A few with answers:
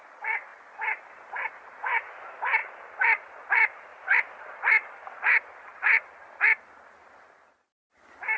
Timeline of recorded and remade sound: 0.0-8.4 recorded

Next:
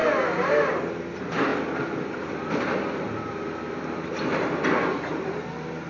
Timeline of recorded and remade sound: 0.0-5.9 recorded

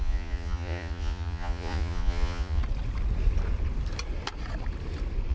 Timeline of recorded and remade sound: 0.0-2.6 remade; 2.6-5.3 recorded

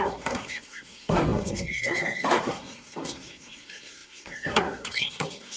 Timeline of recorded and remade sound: 0.0-5.6 remade

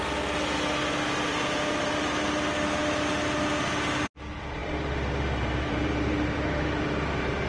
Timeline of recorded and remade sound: 0.0-4.6 recorded; 4.6-7.5 remade

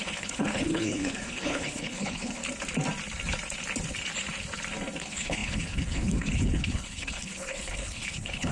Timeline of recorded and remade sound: 0.0-2.4 remade; 2.4-5.0 recorded; 5.0-8.5 remade

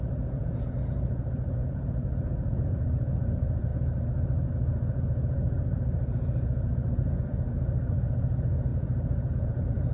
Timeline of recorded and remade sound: 0.0-3.7 remade; 3.7-4.5 recorded; 4.5-9.9 remade